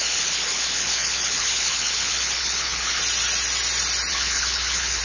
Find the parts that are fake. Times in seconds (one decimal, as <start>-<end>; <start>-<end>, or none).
0.0-3.0; 4.1-5.0